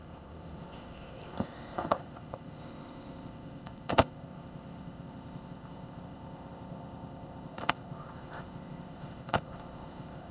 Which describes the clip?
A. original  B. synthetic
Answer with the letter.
B